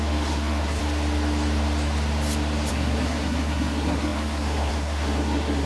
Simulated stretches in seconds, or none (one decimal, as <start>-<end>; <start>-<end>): 0.0-0.8; 2.7-5.7